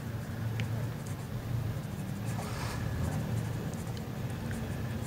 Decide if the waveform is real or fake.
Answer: real